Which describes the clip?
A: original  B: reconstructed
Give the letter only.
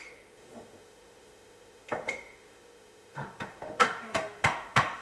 B